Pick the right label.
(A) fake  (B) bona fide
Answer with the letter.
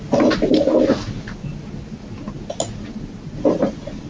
B